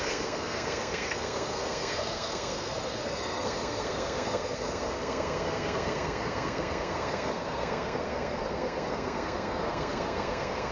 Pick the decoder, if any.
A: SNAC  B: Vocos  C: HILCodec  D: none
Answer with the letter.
A